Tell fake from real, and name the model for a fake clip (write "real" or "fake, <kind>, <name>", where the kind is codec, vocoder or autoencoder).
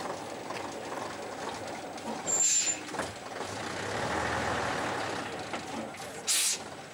real